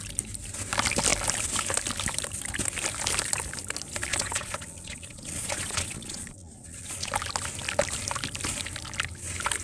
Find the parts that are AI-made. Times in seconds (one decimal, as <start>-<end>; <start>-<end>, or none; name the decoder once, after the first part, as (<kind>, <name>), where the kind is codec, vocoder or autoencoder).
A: 4.1-7.1 (vocoder, Vocos)